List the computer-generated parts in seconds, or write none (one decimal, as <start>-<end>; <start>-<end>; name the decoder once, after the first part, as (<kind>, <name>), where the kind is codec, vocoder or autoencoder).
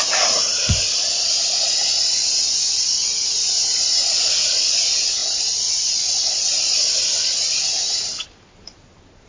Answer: none